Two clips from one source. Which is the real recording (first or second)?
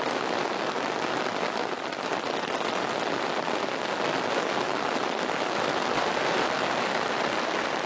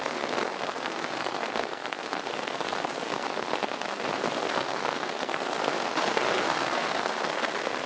first